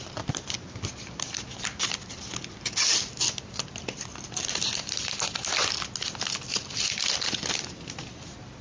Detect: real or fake real